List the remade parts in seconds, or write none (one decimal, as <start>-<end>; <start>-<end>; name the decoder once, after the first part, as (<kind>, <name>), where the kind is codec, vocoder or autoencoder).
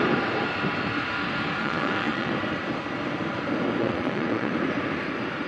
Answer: 1.6-2.3 (vocoder, Vocos); 3.8-4.5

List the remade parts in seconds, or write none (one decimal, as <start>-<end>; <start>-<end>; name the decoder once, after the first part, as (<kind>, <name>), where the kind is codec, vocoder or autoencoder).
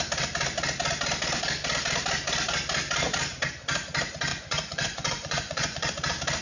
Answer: 4.3-5.9 (vocoder, Vocos)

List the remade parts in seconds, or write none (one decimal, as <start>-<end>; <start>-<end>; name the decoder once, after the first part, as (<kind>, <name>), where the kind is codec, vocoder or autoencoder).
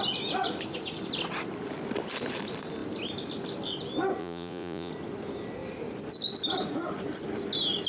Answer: 4.2-4.9 (vocoder, Vocos)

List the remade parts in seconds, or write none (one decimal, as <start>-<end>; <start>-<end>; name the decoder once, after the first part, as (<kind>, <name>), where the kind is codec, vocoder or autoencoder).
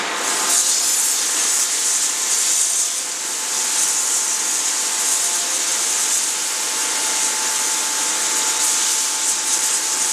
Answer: none